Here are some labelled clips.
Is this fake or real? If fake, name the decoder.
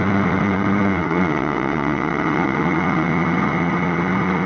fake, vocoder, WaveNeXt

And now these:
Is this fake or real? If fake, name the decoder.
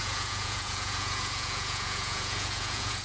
fake, vocoder, Vocos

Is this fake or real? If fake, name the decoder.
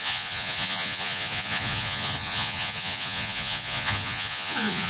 fake, vocoder, Vocos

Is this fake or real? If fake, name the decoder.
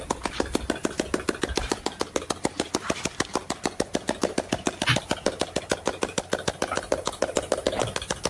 fake, vocoder, BigVGAN v2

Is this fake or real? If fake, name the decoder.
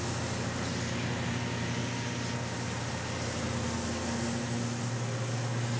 real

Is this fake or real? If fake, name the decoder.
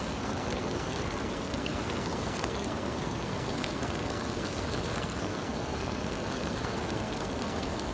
fake, codec, SNAC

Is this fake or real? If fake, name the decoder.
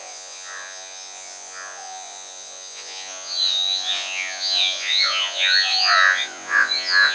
fake, vocoder, Vocos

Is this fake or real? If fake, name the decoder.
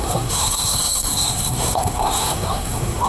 fake, codec, SNAC